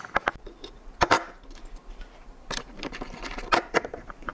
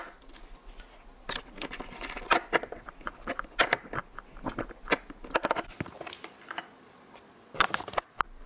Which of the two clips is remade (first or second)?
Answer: first